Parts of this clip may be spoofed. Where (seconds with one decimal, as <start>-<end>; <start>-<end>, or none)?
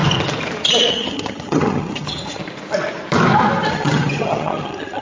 0.9-2.4; 3.7-5.0